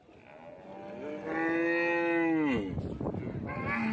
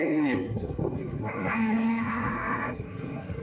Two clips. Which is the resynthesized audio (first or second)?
second